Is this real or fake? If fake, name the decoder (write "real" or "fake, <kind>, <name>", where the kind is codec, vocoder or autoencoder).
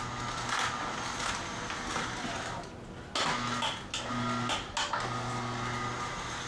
real